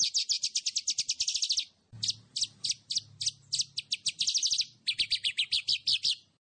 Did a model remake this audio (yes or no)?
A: no